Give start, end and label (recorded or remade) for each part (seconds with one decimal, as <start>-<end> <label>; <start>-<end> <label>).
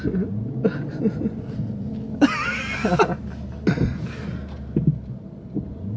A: 0.0-6.0 recorded